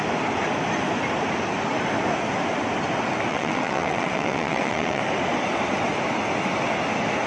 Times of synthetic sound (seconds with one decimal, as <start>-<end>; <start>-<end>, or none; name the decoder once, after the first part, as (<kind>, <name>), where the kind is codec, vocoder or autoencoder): 3.3-5.0 (vocoder, WaveNeXt)